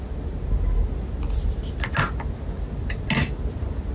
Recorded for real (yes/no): yes